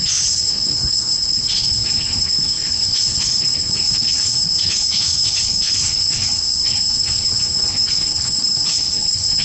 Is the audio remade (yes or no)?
yes